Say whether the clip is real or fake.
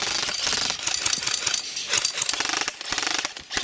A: real